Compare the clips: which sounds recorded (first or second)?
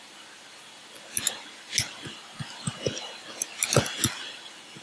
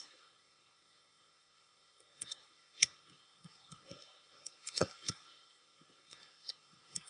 first